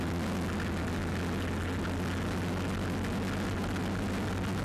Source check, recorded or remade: recorded